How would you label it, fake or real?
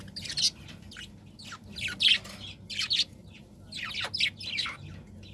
real